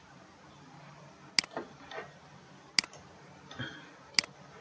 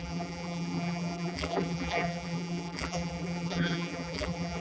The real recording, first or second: first